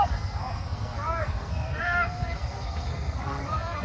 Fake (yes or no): yes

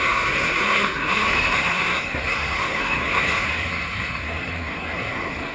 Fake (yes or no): yes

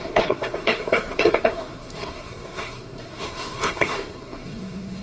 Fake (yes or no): yes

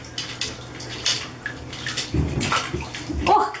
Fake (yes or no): no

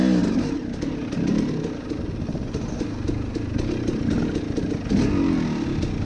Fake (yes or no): no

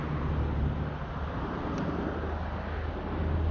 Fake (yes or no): no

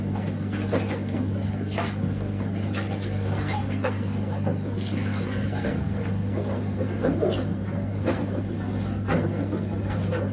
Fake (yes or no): yes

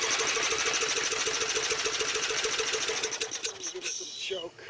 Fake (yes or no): no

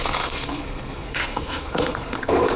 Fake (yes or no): yes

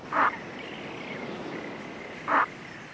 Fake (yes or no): no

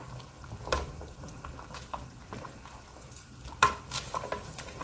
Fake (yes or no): no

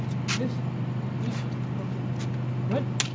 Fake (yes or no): no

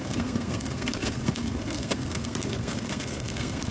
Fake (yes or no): yes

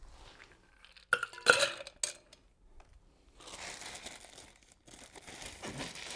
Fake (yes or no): no